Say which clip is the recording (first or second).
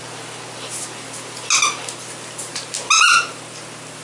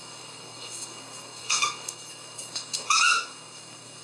first